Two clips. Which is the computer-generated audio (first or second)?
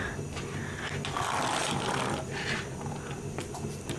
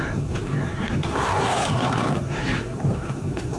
second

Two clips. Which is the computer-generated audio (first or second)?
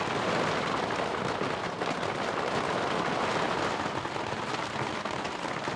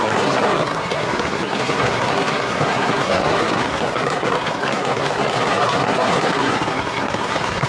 second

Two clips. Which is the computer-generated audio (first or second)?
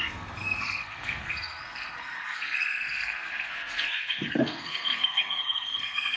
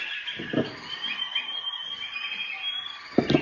first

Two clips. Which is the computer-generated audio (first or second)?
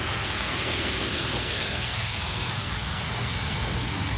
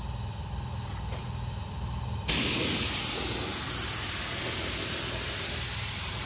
first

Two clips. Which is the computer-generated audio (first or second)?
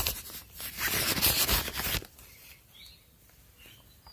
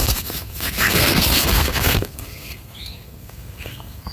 second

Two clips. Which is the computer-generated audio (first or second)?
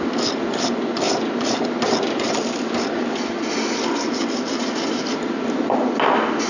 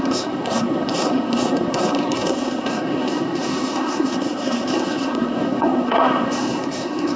second